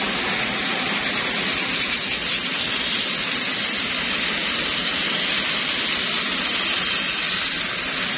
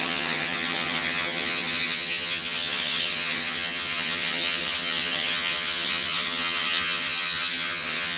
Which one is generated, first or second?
second